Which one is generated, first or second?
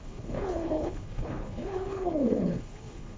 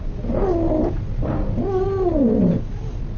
first